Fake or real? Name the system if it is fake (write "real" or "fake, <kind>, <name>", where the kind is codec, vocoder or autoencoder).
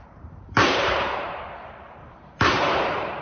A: fake, vocoder, BigVGAN v2